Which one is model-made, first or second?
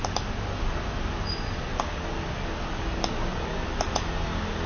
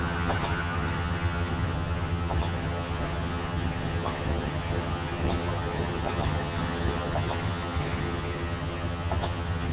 second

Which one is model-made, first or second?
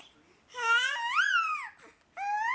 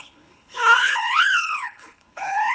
second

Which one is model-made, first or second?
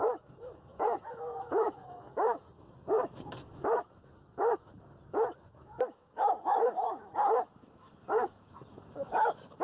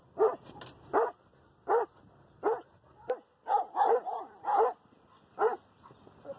first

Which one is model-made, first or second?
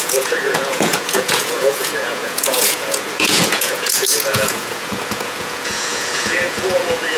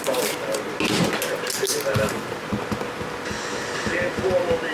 first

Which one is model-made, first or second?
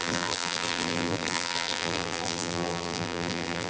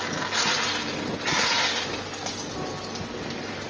first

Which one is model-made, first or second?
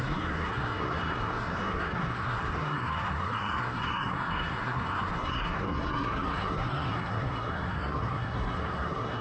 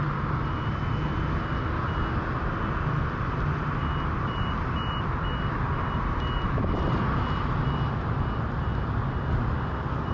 first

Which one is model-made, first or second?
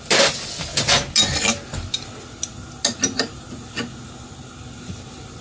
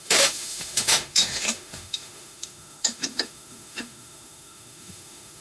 second